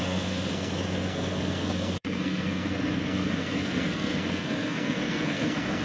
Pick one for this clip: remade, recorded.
remade